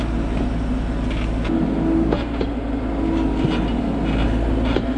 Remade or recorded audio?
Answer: recorded